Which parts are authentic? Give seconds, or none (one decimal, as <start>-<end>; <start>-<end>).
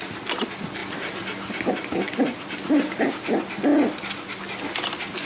0.0-5.2